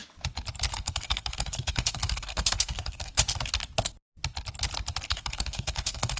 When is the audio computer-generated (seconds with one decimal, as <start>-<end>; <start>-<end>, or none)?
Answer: 0.7-3.1; 5.1-6.2